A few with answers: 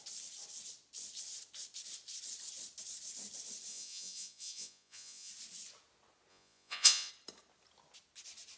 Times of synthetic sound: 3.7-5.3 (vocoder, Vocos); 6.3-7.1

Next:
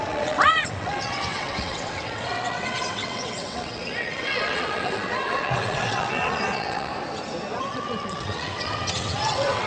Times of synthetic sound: 0.0-6.9 (vocoder, WaveNeXt); 7.6-9.7

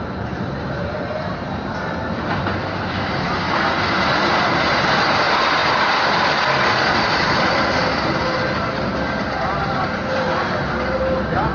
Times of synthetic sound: none

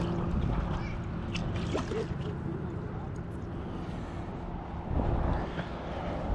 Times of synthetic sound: none

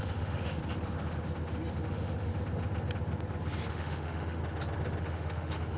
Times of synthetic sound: 0.0-0.6 (autoencoder, DAC-VAE); 1.9-2.3; 3.7-4.4; 5.0-5.8

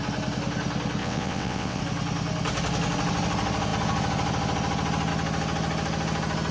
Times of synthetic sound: 1.0-1.8 (vocoder, WaveNeXt)

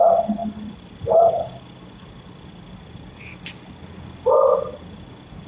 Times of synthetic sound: none

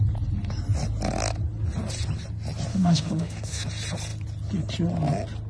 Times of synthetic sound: 2.7-3.6 (autoencoder, DAC-VAE)